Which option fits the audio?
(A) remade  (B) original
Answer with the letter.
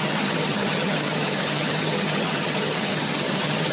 A